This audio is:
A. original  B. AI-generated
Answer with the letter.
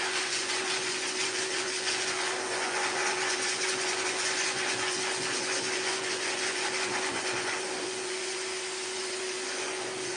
B